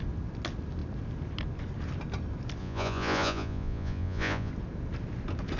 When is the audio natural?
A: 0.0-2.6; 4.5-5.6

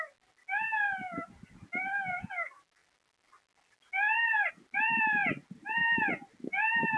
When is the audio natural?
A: 0.0-7.0

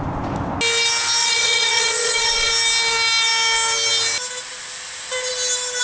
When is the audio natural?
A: 0.0-1.2; 2.5-5.8

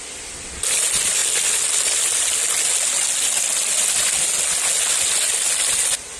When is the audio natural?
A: 0.0-6.2

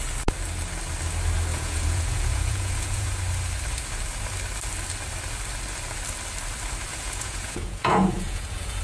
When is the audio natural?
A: 0.0-1.5; 3.2-6.9

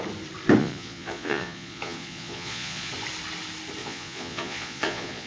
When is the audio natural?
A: 0.0-0.6; 2.9-3.8

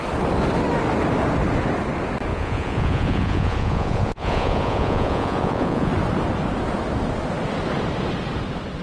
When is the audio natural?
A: 0.0-2.3; 5.9-8.8

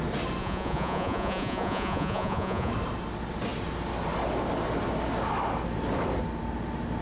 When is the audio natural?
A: 0.0-0.4; 2.7-7.0